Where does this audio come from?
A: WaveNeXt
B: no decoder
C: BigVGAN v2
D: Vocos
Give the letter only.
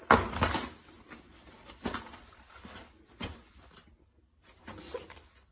B